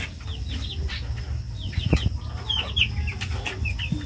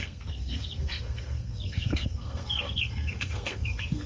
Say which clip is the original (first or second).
first